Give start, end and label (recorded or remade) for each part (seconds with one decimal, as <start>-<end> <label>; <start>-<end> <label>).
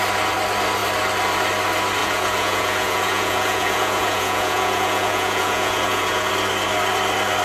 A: 0.0-2.0 recorded; 2.0-6.3 remade; 6.3-7.4 recorded